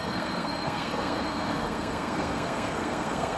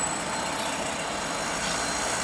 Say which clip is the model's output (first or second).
first